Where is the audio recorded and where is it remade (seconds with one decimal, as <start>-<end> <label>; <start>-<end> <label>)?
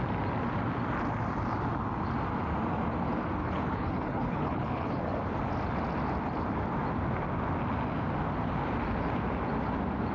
0.0-3.4 recorded; 3.4-5.0 remade; 5.0-10.1 recorded